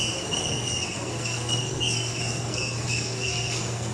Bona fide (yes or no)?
no